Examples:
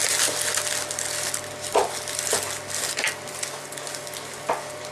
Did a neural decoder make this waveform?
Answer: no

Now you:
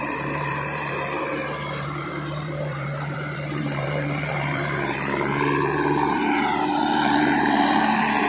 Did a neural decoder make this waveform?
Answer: yes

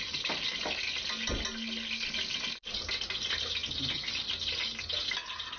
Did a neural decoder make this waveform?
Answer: no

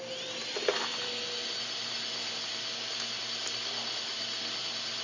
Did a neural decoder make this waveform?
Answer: no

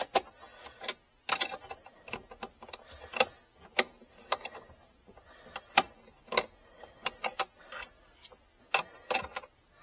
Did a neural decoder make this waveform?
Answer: no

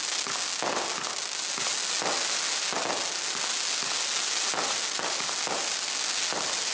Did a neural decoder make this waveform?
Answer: no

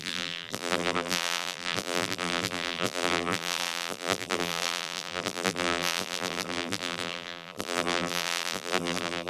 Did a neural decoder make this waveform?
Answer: yes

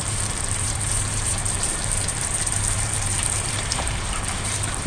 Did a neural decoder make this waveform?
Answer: yes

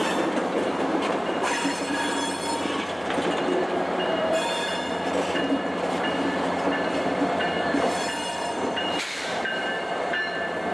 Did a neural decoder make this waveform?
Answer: yes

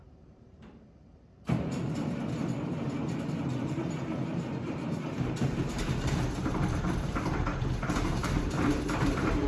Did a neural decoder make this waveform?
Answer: yes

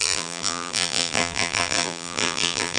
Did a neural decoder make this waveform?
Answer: yes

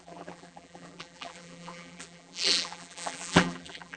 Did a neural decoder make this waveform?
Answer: yes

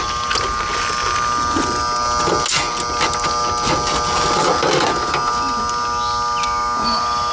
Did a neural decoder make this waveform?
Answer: no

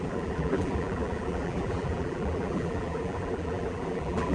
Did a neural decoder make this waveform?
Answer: yes